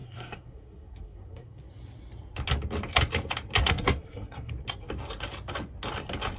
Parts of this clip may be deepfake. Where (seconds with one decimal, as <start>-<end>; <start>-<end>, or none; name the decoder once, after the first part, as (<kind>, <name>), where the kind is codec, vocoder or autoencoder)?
0.0-1.6 (codec, SNAC); 3.6-4.5